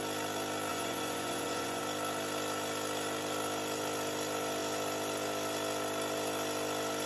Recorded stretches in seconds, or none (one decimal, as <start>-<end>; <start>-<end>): 0.0-0.7; 1.8-7.1